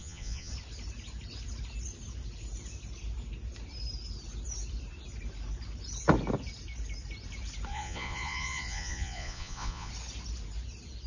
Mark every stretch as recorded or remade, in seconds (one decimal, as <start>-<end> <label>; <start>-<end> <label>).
0.0-0.5 remade; 0.5-7.7 recorded; 7.7-9.9 remade; 9.9-11.1 recorded